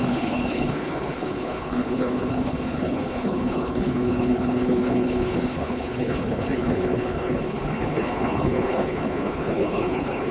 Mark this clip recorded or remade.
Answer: remade